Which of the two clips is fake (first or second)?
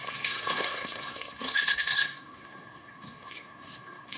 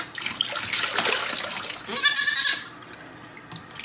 first